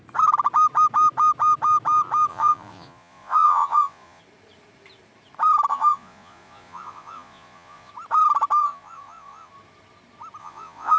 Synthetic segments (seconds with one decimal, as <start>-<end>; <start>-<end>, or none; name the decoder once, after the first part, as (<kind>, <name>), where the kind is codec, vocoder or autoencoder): 2.3-4.2 (vocoder, Vocos); 5.7-7.9; 8.6-9.5; 10.4-11.0